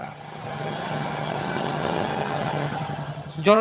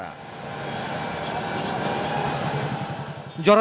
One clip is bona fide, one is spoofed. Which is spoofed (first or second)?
first